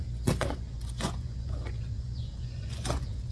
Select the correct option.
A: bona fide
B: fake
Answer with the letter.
B